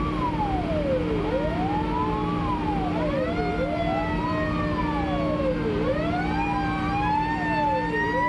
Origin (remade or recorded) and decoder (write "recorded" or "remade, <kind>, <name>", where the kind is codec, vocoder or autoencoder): recorded